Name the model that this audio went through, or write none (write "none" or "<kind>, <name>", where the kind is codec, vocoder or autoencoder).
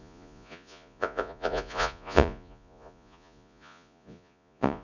vocoder, Vocos